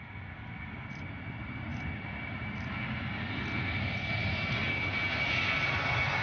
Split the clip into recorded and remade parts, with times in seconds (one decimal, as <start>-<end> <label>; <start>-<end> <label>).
0.0-1.7 recorded; 1.7-2.4 remade; 2.4-6.2 recorded